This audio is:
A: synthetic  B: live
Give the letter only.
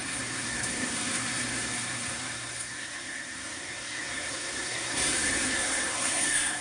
A